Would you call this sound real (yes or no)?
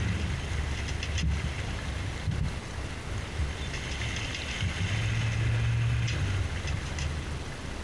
yes